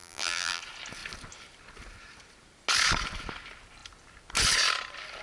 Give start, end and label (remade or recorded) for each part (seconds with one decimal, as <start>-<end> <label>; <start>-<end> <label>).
0.0-0.6 remade; 0.6-5.2 recorded